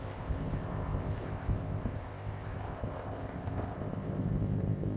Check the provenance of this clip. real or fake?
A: fake